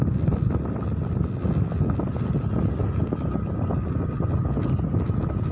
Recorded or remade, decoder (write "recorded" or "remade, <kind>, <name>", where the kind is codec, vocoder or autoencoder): recorded